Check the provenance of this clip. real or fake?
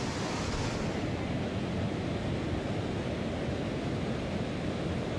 real